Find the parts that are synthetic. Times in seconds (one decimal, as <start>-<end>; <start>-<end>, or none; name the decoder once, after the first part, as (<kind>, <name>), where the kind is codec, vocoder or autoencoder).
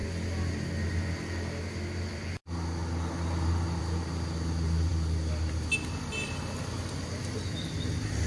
none